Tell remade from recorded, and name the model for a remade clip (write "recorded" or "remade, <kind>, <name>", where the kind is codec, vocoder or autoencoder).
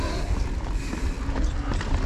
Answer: recorded